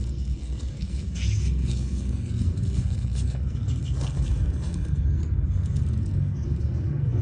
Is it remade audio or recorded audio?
remade